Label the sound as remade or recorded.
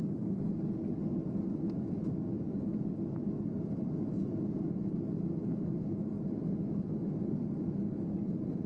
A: recorded